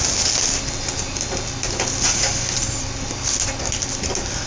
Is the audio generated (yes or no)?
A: no